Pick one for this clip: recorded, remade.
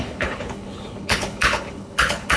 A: remade